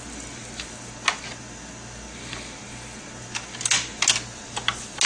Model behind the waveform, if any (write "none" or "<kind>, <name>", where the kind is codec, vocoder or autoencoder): none